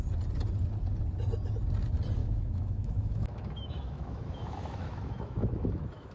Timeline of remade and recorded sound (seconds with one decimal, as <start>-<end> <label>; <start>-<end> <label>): 0.0-2.2 recorded; 2.2-6.1 remade